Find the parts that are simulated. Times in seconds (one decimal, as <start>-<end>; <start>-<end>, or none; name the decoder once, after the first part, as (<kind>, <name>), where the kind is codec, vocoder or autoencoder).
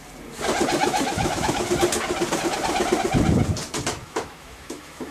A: 0.8-1.6 (autoencoder, DAC-VAE); 4.0-5.1